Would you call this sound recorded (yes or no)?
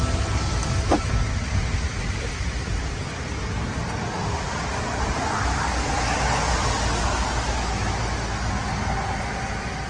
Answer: yes